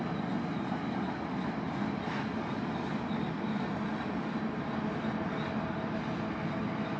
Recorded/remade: recorded